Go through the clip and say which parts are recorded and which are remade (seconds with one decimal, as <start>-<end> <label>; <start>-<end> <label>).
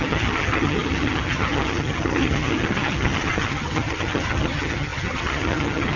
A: 0.0-6.0 remade